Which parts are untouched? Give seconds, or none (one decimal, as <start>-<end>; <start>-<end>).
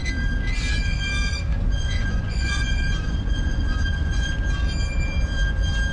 0.0-1.5; 4.3-5.9